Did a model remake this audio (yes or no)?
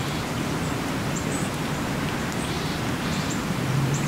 yes